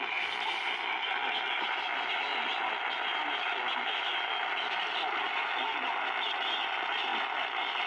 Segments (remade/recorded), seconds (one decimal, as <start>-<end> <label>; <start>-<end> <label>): 0.0-7.1 recorded; 7.1-7.9 remade